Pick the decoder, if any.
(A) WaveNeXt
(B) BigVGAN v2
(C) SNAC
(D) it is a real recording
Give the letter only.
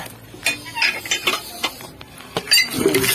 D